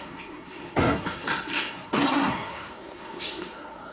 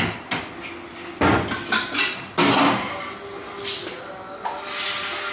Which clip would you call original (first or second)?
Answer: second